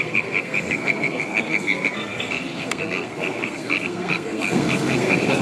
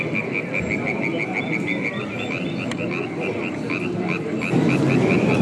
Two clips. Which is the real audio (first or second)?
second